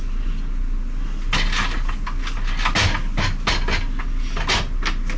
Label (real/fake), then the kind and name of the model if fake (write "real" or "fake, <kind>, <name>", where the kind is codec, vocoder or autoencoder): real